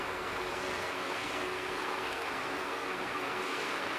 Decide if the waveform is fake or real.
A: fake